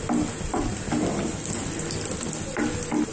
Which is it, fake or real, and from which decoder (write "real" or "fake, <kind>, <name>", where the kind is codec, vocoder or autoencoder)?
real